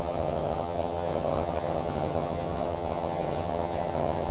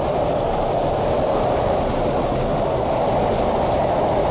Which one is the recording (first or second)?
second